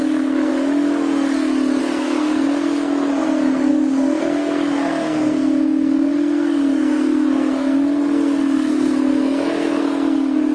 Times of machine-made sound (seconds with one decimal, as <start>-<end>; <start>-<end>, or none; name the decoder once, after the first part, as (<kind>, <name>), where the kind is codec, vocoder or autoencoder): 0.0-0.5 (codec, SNAC); 1.8-10.5